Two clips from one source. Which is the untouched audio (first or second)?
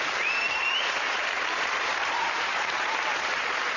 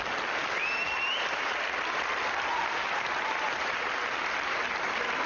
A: second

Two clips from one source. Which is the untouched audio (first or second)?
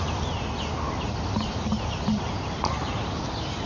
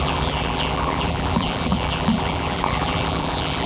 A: first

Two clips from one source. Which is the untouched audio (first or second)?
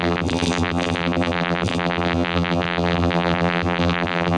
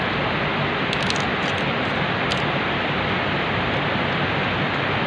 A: second